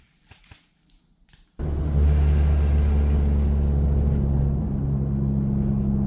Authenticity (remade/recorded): recorded